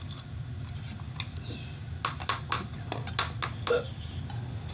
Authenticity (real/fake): real